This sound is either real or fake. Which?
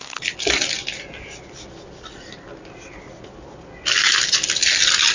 real